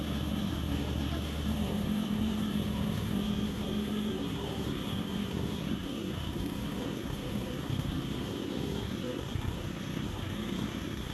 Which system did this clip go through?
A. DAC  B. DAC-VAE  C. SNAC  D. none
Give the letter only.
C